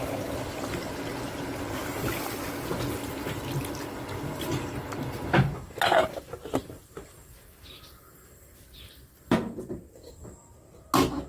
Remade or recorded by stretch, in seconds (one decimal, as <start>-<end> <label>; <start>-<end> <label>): 0.0-1.8 recorded; 1.8-2.4 remade; 2.4-6.6 recorded; 6.6-10.2 remade; 10.2-11.3 recorded